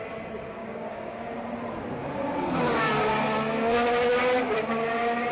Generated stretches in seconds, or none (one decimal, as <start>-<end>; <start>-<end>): 0.6-1.2